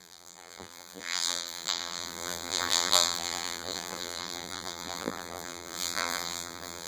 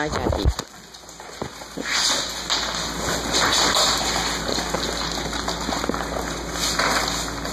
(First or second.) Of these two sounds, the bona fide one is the second